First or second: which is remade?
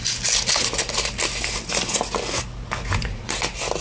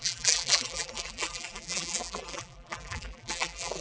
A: second